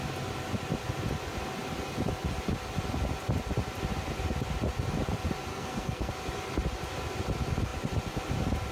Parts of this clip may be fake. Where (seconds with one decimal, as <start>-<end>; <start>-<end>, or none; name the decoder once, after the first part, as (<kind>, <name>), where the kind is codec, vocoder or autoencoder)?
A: 5.5-6.1 (codec, SNAC)